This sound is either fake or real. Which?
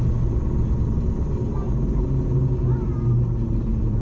real